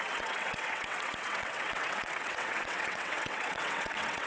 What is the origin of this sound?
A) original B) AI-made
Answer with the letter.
B